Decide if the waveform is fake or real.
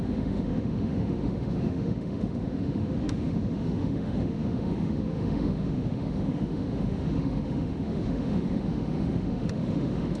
fake